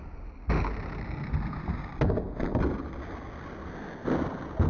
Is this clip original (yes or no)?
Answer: yes